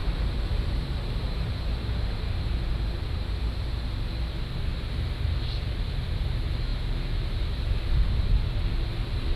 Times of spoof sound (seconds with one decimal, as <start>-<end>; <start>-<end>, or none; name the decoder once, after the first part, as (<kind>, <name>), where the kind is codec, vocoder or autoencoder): 0.0-3.3 (vocoder, BigVGAN v2)